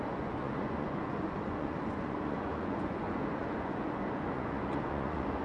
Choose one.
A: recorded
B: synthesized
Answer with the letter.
B